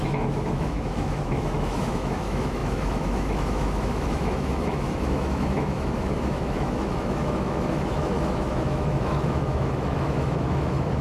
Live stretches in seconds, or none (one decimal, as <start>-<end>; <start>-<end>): none